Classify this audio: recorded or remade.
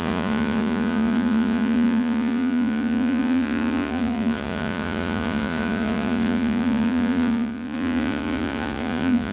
remade